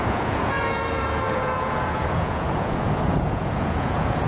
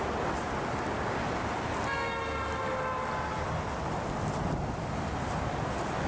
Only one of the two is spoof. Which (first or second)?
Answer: first